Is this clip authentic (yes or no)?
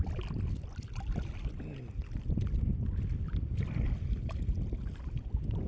yes